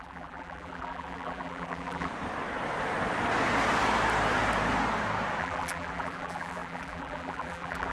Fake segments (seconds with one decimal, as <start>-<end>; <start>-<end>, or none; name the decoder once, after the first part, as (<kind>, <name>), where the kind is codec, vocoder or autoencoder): 0.0-2.1 (vocoder, BigVGAN v2); 5.4-7.9